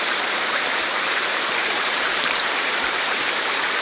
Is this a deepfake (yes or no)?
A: yes